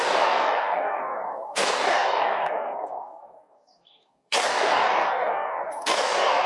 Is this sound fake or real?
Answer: fake